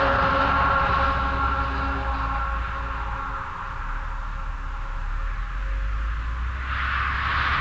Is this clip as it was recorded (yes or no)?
yes